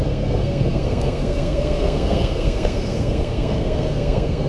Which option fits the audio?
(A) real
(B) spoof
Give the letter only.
B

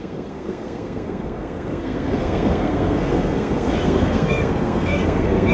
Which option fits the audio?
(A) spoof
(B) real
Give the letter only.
A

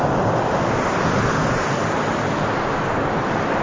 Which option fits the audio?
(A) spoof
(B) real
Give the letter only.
B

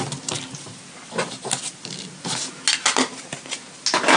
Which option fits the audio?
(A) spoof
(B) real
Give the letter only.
B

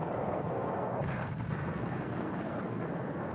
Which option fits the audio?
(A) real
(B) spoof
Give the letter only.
B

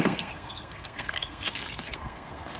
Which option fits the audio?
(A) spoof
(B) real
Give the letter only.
A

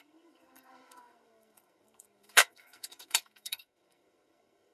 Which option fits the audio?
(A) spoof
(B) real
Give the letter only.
A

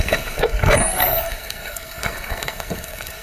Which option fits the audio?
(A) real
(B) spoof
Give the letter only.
B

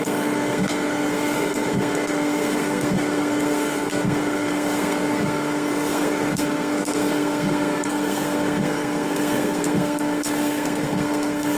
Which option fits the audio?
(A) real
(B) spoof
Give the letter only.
B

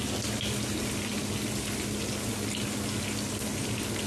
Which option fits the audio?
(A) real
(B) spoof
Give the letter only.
A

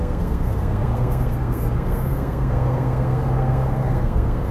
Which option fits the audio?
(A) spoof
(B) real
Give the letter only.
A